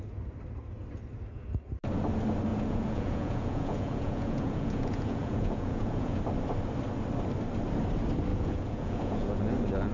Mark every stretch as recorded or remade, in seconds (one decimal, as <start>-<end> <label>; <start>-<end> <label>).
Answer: 0.0-2.5 recorded; 2.5-6.2 remade; 6.2-8.3 recorded; 8.3-9.4 remade; 9.4-9.9 recorded